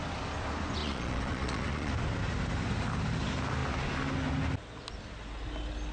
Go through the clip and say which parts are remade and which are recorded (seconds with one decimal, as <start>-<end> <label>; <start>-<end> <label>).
0.0-0.8 recorded; 0.8-1.9 remade; 1.9-5.9 recorded